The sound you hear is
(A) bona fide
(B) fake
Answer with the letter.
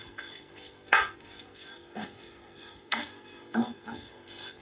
B